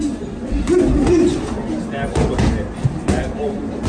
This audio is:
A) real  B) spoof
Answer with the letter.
A